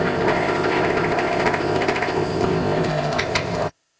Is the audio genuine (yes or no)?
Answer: no